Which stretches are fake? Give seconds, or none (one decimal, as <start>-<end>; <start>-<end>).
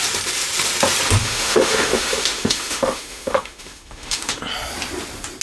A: 1.2-4.4